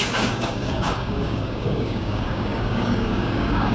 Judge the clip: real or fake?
fake